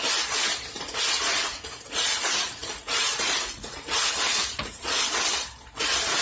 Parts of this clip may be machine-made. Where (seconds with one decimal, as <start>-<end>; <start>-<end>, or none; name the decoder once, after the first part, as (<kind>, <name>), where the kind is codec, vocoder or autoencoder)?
1.3-5.0 (vocoder, Vocos)